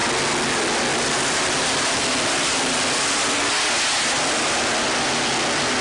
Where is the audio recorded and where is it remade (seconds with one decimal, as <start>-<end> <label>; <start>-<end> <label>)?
0.0-5.8 recorded